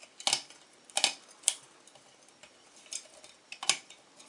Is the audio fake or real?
real